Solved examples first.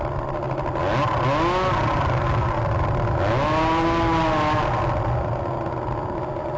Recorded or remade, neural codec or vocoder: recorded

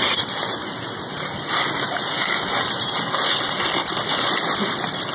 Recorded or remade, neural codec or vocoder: recorded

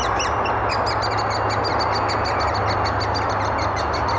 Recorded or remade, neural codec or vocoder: recorded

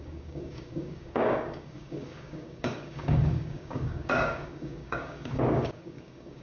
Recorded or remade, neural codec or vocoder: remade, codec, DAC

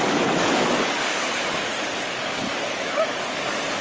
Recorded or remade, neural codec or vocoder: remade, codec, DAC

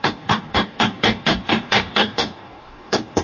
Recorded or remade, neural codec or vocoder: remade, codec, DAC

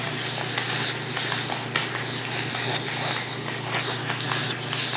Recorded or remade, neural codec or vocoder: recorded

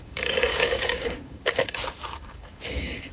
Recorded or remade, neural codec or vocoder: remade, codec, DAC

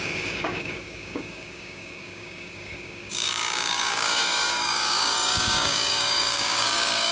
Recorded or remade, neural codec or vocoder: remade, codec, DAC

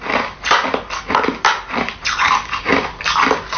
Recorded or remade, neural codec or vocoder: recorded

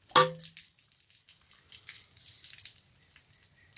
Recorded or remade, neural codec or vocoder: recorded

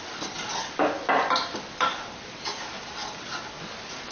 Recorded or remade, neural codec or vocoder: recorded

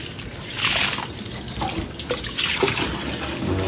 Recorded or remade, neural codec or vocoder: recorded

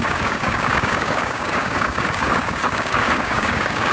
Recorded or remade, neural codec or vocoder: remade, codec, DAC